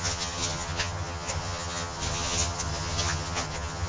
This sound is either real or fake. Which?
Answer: fake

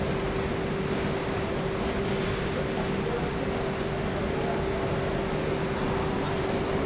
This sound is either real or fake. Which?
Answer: real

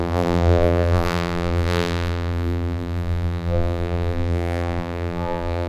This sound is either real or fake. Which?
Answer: fake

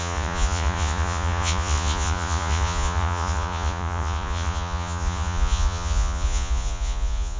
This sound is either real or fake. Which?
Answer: fake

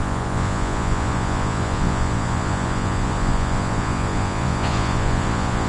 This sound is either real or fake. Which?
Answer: fake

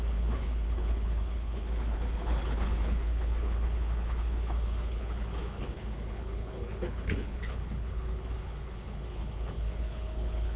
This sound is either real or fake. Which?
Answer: fake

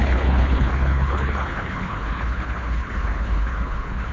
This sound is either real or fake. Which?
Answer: fake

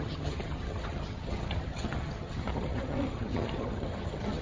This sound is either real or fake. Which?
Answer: fake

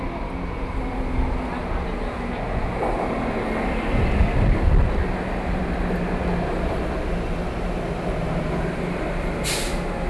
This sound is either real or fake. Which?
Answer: real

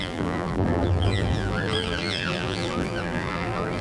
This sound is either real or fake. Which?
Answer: fake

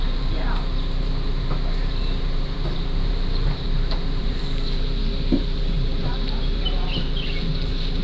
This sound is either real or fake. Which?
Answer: fake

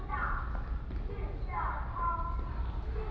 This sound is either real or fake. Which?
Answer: real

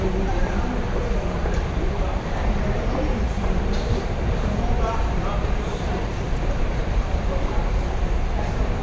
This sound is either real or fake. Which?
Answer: fake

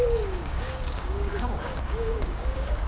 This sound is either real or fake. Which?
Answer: fake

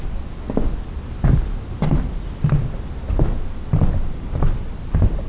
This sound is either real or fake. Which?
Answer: real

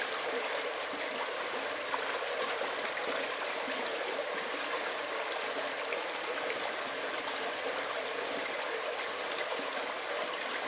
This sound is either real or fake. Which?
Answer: real